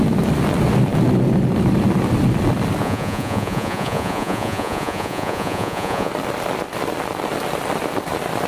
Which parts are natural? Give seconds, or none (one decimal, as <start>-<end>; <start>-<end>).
0.0-2.8; 6.1-8.5